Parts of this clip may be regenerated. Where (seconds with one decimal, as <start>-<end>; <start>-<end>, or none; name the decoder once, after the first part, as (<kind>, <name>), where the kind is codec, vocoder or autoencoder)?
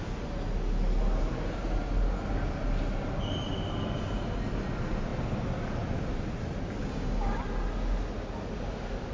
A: 6.8-7.4 (codec, DAC)